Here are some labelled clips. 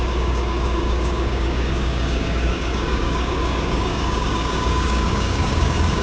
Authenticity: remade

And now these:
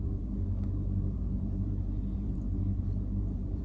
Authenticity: remade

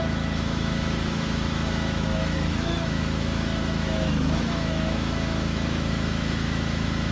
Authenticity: remade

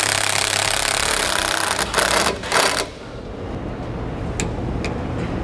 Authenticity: recorded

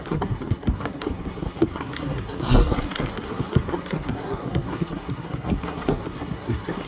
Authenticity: remade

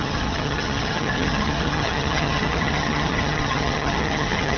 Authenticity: remade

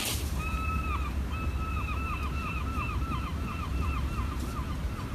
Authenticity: recorded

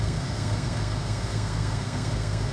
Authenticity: remade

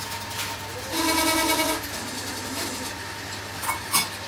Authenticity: recorded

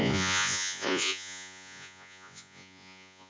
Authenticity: remade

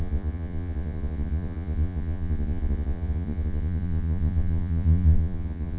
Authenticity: remade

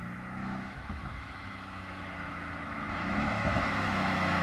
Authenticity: remade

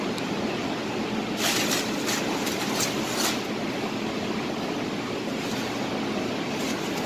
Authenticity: recorded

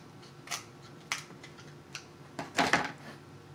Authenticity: recorded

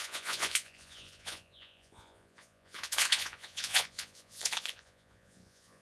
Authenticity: remade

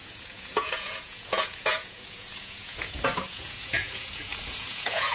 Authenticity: remade